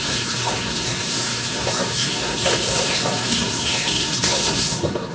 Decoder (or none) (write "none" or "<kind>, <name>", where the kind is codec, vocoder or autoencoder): codec, SNAC